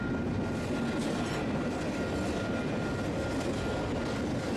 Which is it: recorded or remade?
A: recorded